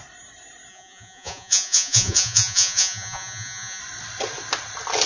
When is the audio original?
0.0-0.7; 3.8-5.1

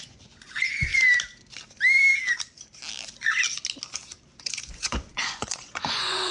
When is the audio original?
0.9-4.4

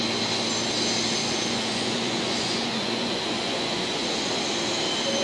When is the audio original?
0.0-1.2; 4.3-5.2

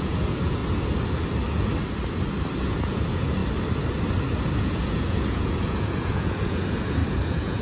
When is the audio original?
0.6-2.6; 3.4-4.6